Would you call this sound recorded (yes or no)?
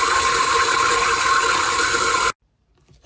yes